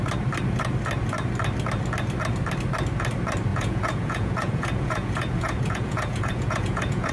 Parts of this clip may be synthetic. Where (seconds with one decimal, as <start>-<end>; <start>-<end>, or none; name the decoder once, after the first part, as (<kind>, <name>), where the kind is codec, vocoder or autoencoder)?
3.5-7.1 (vocoder, Vocos)